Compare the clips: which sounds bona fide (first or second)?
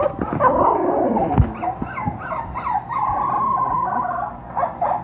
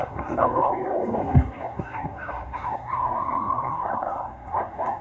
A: first